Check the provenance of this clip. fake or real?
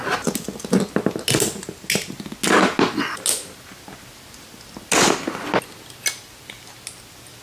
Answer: real